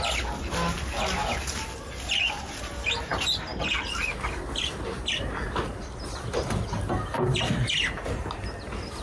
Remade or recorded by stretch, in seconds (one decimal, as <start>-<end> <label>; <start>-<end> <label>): 0.0-9.0 recorded